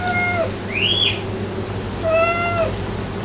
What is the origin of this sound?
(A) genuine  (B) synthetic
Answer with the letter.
A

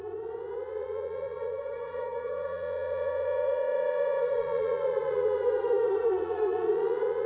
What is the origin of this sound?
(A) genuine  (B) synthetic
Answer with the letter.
B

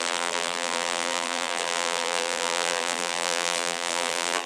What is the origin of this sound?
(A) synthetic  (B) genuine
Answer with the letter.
A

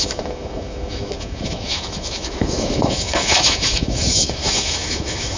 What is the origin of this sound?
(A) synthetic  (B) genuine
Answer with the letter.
A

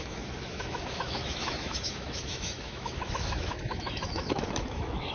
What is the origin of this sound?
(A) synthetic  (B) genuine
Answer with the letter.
A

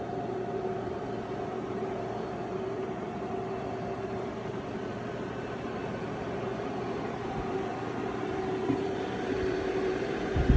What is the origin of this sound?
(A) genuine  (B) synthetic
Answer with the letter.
B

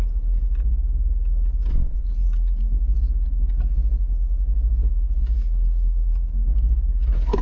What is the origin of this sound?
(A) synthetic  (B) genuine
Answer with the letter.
B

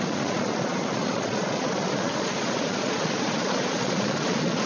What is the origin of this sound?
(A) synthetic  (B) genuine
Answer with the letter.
A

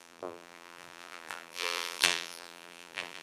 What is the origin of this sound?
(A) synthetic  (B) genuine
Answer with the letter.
A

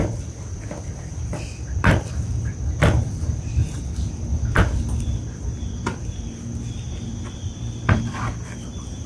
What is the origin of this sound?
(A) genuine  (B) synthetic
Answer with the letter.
B